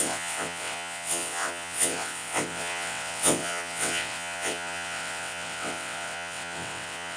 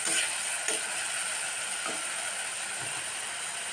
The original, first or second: second